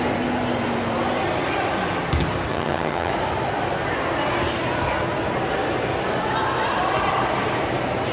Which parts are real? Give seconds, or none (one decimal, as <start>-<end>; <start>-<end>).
0.0-2.5; 3.1-8.1